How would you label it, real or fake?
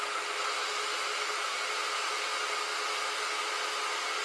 real